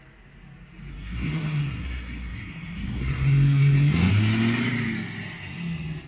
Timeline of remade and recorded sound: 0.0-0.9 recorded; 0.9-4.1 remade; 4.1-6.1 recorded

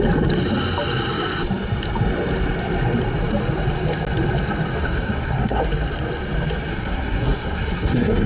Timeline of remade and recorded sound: 0.0-4.8 recorded; 4.8-5.6 remade; 5.6-6.7 recorded; 6.7-8.3 remade

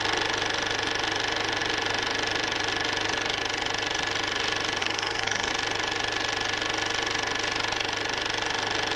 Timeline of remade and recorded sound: 0.0-4.8 recorded; 4.8-5.5 remade; 5.5-9.0 recorded